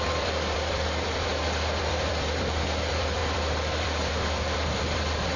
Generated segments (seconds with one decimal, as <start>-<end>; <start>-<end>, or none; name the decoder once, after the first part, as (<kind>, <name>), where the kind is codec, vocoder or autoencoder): 0.0-1.3 (vocoder, BigVGAN v2); 1.8-5.4